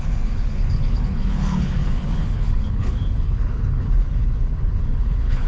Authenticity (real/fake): fake